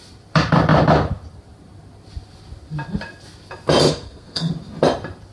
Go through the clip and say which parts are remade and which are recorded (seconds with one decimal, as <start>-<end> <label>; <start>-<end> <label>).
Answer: 0.0-3.9 recorded; 3.9-4.5 remade; 4.5-5.3 recorded